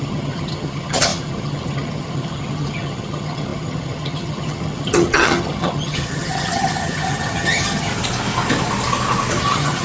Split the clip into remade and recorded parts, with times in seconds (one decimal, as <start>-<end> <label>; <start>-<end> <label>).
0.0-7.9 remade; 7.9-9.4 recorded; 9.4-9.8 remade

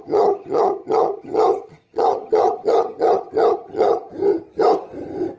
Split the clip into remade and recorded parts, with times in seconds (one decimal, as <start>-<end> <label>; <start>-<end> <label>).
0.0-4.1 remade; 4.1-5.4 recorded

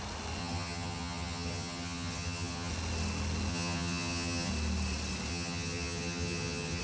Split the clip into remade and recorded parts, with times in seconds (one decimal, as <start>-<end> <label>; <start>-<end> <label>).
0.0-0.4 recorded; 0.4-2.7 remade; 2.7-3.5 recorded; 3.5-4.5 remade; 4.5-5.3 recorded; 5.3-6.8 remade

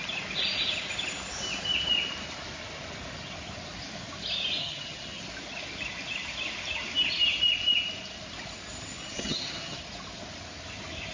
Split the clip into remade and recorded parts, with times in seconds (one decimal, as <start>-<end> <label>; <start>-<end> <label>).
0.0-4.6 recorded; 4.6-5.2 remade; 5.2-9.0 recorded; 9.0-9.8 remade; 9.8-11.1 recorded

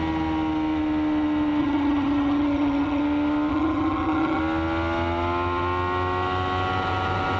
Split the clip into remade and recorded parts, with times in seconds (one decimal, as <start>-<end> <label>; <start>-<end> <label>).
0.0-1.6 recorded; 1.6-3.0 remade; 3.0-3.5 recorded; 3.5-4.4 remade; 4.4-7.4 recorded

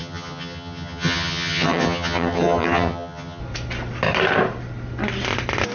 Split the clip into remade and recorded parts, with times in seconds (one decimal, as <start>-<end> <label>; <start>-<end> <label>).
0.0-3.4 remade; 3.4-5.7 recorded

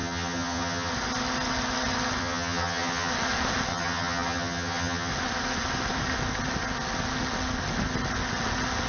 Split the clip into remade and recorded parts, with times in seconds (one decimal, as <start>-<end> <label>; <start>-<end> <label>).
0.0-0.9 remade; 0.9-2.2 recorded; 2.2-3.1 remade; 3.1-3.7 recorded; 3.7-5.1 remade; 5.1-8.9 recorded